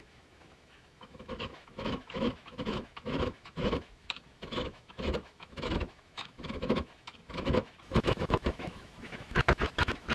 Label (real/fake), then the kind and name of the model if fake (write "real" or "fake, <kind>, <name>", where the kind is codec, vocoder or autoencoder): fake, autoencoder, DAC-VAE